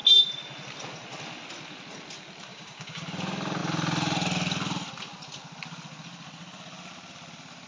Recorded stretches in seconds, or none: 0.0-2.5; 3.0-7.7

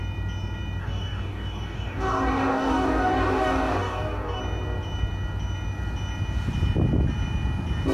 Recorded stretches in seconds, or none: 0.0-0.8; 4.4-7.9

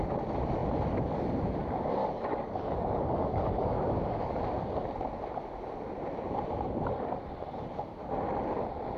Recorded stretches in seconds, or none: 0.0-2.0; 4.4-9.0

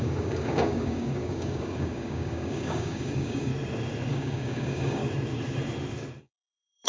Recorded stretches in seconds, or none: 3.5-4.1; 5.0-6.2

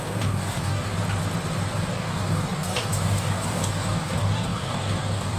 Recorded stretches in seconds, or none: 0.9-1.9

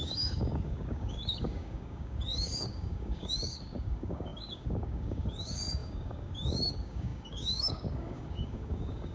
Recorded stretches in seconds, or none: none